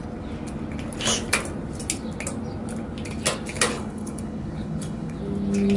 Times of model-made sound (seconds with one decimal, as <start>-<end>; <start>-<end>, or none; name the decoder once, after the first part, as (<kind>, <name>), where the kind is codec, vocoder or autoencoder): 3.7-5.2 (codec, HILCodec)